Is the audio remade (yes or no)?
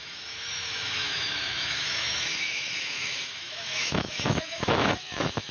yes